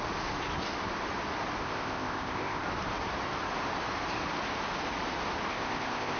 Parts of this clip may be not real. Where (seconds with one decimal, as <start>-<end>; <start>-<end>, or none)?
1.6-2.6; 5.5-6.2